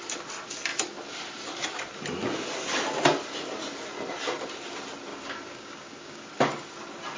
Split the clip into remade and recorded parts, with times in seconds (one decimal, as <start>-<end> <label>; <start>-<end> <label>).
0.0-5.1 recorded; 5.1-6.3 remade; 6.3-7.2 recorded